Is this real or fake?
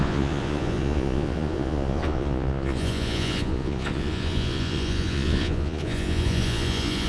fake